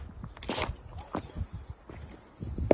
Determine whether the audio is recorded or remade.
recorded